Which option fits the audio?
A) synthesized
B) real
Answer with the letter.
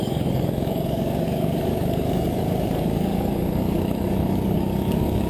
A